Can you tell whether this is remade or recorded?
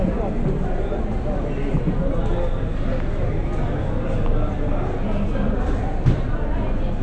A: recorded